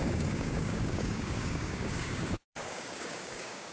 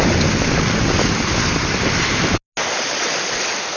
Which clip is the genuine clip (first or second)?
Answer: second